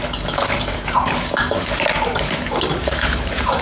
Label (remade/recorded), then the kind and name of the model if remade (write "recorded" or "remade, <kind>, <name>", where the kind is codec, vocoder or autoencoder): remade, codec, DAC